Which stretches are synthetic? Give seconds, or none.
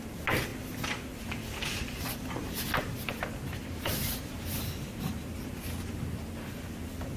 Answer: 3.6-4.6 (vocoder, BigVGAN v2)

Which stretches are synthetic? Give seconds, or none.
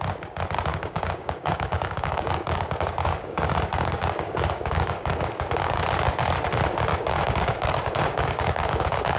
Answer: 0.7-5.8 (codec, DAC); 6.9-9.2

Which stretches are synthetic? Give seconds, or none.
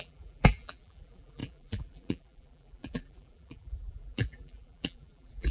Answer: 0.0-5.5 (vocoder, BigVGAN v2)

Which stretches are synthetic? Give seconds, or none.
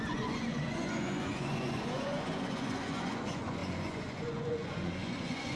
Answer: 0.0-5.6 (vocoder, Vocos)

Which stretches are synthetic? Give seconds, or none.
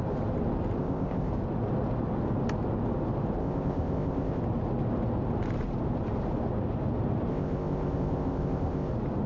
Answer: 0.8-1.3 (codec, ZipCodec); 3.4-4.4; 7.3-8.9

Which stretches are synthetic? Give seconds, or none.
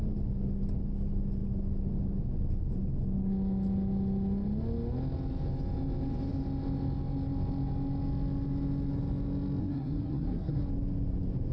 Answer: 9.6-10.6 (codec, SNAC)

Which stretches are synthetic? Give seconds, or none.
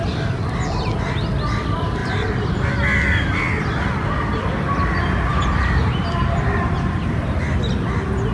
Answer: 2.0-2.6 (vocoder, BigVGAN v2); 5.3-6.0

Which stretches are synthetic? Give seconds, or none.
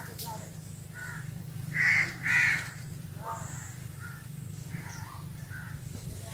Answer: 1.0-1.9 (codec, DAC); 3.8-4.7